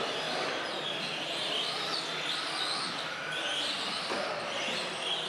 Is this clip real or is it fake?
real